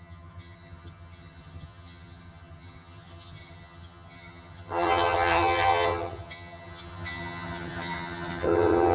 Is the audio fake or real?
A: fake